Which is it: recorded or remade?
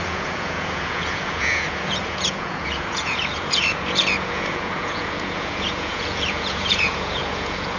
remade